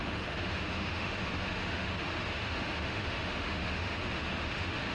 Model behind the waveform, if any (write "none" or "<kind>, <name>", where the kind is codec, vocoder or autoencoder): autoencoder, DAC-VAE